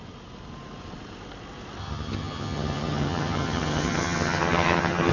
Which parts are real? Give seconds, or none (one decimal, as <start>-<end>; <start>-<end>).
0.0-1.8